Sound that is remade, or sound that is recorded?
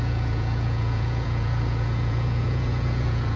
remade